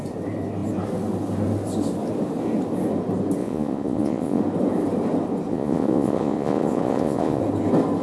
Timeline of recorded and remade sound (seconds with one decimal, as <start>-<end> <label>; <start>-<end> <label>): 0.0-3.4 recorded; 3.4-4.4 remade; 4.4-5.5 recorded; 5.5-7.4 remade; 7.4-8.0 recorded